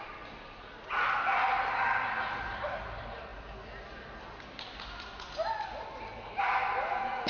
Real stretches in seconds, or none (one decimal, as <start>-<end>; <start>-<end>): 0.0-7.3